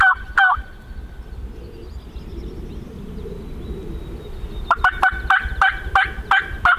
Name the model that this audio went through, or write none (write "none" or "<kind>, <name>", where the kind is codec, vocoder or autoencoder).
none